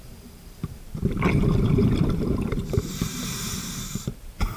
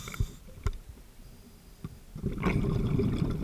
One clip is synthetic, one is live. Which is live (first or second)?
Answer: second